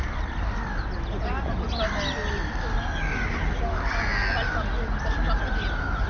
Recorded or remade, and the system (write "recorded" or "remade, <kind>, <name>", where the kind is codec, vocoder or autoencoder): recorded